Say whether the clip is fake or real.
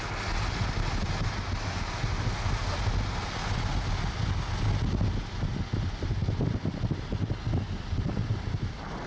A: real